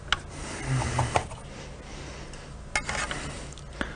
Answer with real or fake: real